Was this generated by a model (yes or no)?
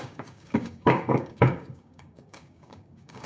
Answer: yes